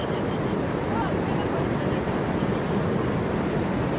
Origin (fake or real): real